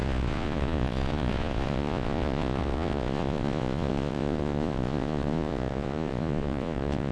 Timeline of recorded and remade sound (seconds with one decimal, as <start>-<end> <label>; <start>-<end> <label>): 0.0-7.1 remade